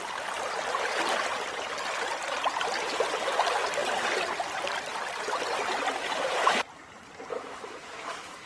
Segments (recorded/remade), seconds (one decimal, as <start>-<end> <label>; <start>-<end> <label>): 0.0-7.3 recorded; 7.3-8.5 remade